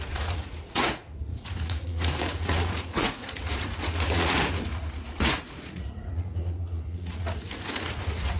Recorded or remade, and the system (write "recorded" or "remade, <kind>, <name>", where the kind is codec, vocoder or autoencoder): remade, vocoder, Vocos